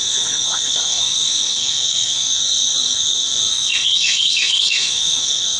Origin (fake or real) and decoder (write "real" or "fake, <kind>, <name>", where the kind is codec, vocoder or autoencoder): fake, codec, SNAC